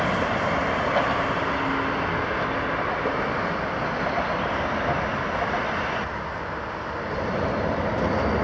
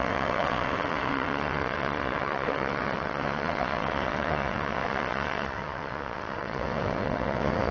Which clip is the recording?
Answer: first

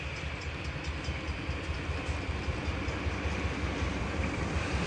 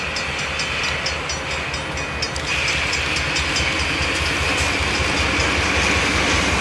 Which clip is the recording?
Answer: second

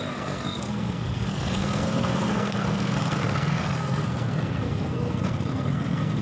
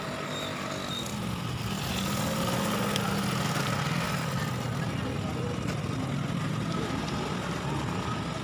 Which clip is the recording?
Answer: second